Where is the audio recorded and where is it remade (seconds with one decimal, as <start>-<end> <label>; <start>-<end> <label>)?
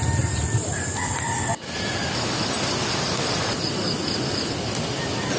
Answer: 0.0-5.4 recorded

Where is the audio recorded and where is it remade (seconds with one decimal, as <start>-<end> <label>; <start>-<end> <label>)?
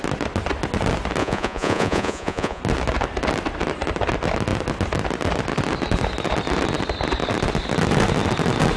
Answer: 0.0-1.2 recorded; 1.2-2.6 remade; 2.6-8.8 recorded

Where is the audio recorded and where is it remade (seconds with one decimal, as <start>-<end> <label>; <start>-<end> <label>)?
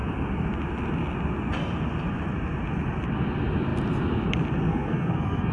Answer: 0.0-4.7 recorded; 4.7-5.5 remade